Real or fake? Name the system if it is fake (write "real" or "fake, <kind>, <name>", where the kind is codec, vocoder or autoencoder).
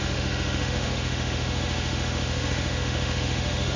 fake, autoencoder, DAC-VAE